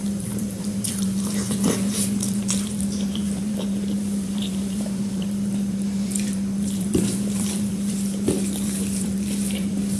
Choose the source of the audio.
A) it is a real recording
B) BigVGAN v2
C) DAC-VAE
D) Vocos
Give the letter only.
B